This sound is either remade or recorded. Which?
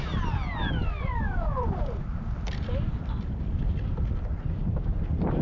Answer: remade